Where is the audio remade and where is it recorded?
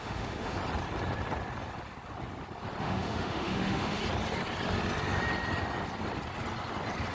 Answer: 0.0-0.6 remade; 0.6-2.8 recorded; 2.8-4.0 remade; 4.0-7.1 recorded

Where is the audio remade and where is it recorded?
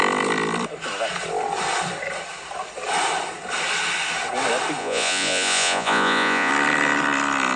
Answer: 0.0-4.8 recorded; 4.8-6.5 remade; 6.5-7.6 recorded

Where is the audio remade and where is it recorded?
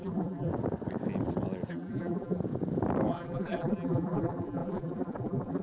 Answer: 0.0-0.5 remade; 0.5-1.7 recorded; 1.7-2.4 remade; 2.4-3.1 recorded; 3.1-5.6 remade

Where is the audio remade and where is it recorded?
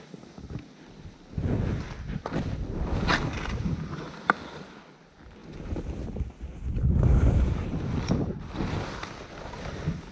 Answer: 0.0-10.1 recorded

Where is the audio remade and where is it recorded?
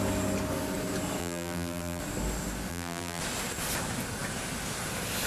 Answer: 0.0-1.2 recorded; 1.2-2.0 remade; 2.0-2.7 recorded; 2.7-3.2 remade; 3.2-5.3 recorded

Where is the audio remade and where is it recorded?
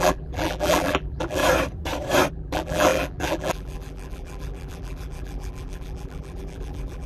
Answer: 0.0-1.4 remade; 1.4-2.3 recorded; 2.3-7.1 remade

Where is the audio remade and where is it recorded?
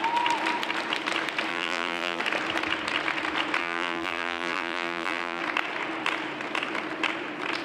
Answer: 0.0-1.5 recorded; 1.5-2.2 remade; 2.2-3.6 recorded; 3.6-5.4 remade; 5.4-7.6 recorded